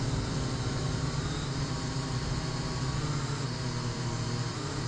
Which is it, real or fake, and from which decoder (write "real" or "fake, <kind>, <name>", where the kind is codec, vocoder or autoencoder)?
fake, vocoder, BigVGAN v2